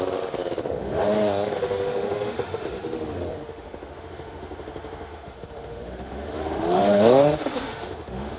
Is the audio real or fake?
fake